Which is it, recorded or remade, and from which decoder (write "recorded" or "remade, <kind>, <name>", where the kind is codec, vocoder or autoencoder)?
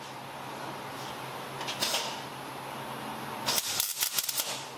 recorded